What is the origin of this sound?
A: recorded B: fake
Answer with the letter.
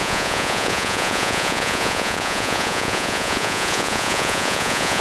B